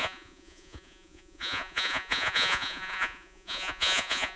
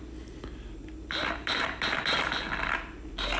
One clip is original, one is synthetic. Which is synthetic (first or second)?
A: first